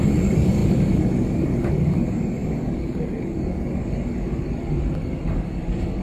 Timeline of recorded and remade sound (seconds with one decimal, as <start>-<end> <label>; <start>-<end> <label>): 0.0-6.0 remade